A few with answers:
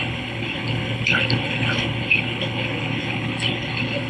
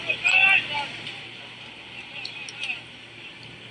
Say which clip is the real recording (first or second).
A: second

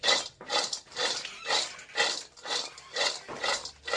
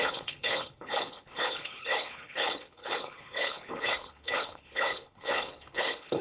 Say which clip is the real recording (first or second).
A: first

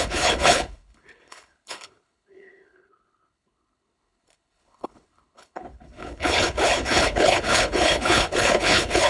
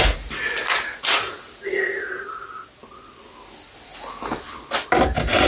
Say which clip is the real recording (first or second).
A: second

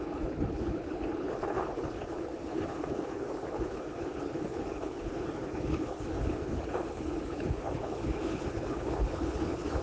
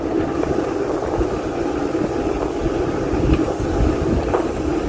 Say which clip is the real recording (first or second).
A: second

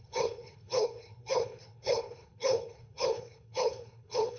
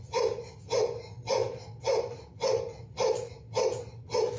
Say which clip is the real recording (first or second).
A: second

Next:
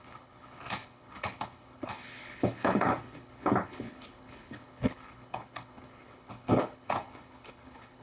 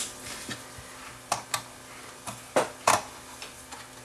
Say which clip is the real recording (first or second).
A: second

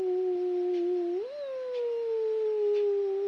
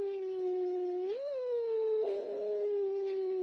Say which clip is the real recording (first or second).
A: first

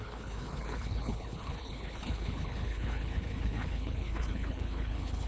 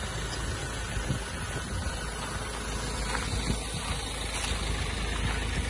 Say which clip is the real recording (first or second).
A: second